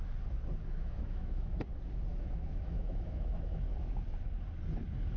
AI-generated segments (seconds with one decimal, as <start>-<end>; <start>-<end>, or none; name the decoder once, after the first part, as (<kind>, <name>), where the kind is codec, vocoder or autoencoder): 0.8-1.6 (autoencoder, DAC-VAE); 2.1-3.6